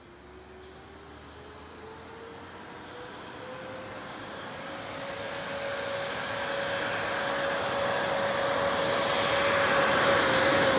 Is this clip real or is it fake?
real